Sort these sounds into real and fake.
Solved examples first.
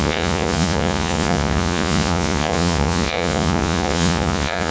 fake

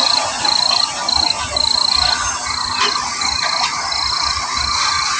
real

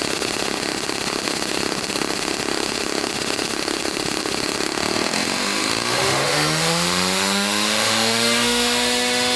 fake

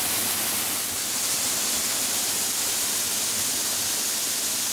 real